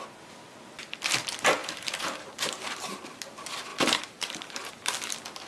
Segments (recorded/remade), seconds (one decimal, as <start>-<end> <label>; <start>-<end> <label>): 0.0-1.6 recorded; 1.6-3.2 remade; 3.2-3.7 recorded; 3.7-4.7 remade; 4.7-5.5 recorded